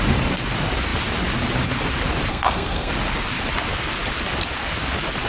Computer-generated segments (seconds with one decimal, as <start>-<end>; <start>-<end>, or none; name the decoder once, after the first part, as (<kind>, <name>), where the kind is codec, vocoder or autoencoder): 2.3-2.9 (codec, SNAC)